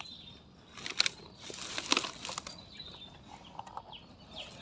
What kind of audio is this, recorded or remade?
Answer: recorded